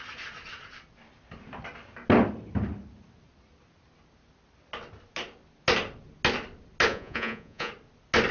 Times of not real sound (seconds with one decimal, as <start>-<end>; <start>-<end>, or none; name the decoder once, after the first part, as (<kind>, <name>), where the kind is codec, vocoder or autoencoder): 6.9-7.7 (vocoder, Vocos)